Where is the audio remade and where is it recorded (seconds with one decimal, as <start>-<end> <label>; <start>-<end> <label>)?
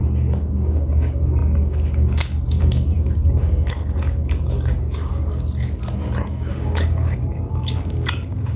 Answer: 0.0-5.1 remade; 5.1-6.5 recorded; 6.5-8.6 remade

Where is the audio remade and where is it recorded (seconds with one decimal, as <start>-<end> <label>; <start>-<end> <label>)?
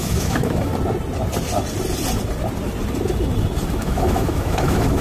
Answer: 0.0-0.7 remade; 0.7-3.7 recorded; 3.7-5.0 remade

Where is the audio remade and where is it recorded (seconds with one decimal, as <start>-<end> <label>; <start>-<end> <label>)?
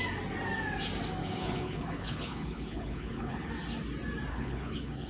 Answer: 0.0-1.2 recorded; 1.2-3.5 remade; 3.5-4.3 recorded; 4.3-5.1 remade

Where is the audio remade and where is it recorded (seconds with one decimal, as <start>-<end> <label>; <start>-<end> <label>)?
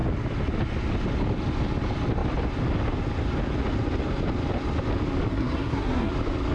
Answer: 0.0-5.3 recorded; 5.3-6.1 remade; 6.1-6.5 recorded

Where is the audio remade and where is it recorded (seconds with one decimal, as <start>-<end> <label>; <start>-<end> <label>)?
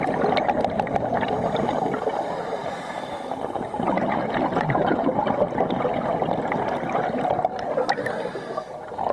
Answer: 0.0-2.6 recorded; 2.6-5.4 remade; 5.4-9.1 recorded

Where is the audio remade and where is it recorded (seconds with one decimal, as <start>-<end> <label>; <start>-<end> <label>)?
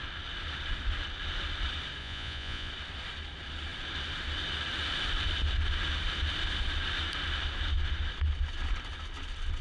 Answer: 0.0-2.0 recorded; 2.0-2.7 remade; 2.7-9.6 recorded